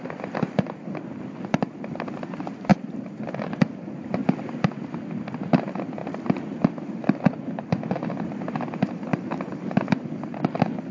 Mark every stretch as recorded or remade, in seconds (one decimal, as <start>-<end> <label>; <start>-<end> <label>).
0.0-2.7 remade; 2.7-3.3 recorded; 3.3-6.0 remade; 6.0-7.6 recorded; 7.6-10.9 remade